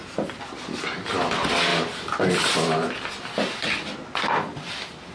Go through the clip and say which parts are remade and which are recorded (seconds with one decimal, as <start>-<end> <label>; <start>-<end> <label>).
0.0-5.1 recorded